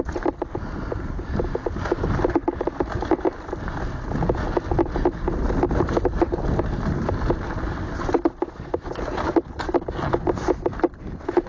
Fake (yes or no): no